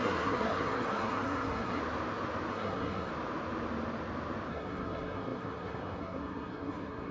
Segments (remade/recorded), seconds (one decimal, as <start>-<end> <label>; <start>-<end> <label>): 0.0-1.8 remade; 1.8-2.5 recorded; 2.5-3.1 remade; 3.1-4.5 recorded; 4.5-7.1 remade

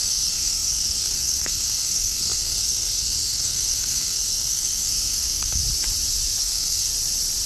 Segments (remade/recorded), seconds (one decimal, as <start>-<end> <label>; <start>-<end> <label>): 0.0-5.6 remade; 5.6-6.4 recorded; 6.4-6.9 remade; 6.9-7.5 recorded

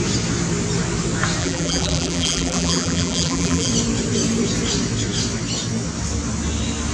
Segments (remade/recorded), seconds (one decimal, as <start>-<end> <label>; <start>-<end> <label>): 0.0-1.4 recorded; 1.4-3.7 remade; 3.7-6.9 recorded

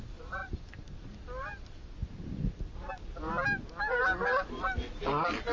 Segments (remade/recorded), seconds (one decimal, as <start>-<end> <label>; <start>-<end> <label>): 0.0-0.4 recorded; 0.4-1.1 remade; 1.1-2.0 recorded; 2.0-2.9 remade; 2.9-5.5 recorded

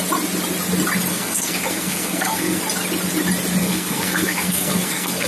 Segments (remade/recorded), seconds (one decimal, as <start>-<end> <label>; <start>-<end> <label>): 0.0-1.1 recorded; 1.1-2.6 remade; 2.6-3.6 recorded; 3.6-5.3 remade

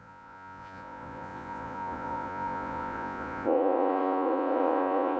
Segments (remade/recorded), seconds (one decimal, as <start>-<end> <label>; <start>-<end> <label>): 0.0-5.2 remade

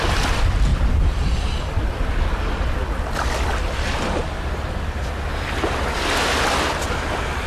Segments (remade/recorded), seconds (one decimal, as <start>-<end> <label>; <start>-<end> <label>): 0.0-7.5 recorded